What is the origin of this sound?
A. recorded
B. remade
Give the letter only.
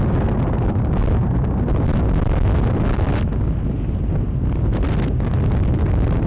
A